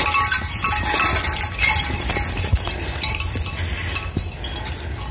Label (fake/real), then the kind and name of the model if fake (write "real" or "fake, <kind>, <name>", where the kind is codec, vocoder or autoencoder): real